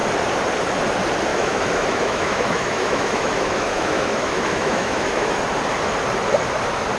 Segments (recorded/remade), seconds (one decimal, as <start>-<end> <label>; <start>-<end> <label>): 0.0-1.3 recorded; 1.3-5.4 remade; 5.4-7.0 recorded